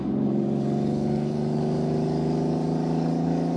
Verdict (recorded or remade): remade